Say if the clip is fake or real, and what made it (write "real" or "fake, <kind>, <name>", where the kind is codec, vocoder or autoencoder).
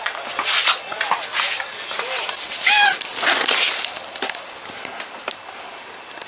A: real